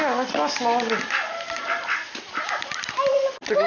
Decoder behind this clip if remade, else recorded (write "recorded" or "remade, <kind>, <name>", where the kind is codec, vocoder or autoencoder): recorded